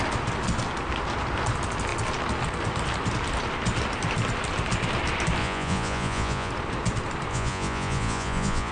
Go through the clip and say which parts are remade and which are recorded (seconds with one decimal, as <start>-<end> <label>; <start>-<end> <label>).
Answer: 0.0-5.4 recorded; 5.4-6.5 remade; 6.5-7.3 recorded; 7.3-8.7 remade